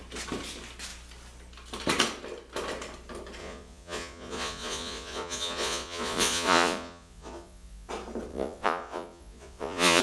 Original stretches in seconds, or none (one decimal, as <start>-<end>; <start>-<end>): 0.0-3.4; 7.9-8.3